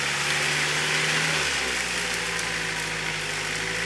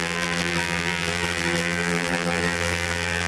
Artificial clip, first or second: second